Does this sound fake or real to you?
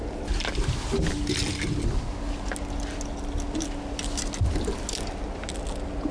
real